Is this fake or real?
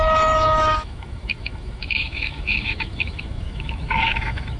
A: fake